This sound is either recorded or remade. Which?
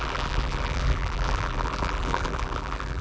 remade